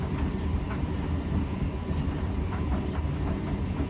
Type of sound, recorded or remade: recorded